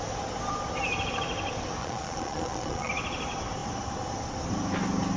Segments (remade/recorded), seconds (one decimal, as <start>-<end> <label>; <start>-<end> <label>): 0.0-1.8 recorded; 1.8-2.9 remade; 2.9-5.2 recorded